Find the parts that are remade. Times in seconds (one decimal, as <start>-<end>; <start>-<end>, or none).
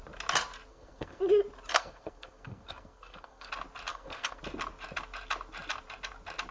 0.7-1.2; 1.7-3.5; 3.9-4.4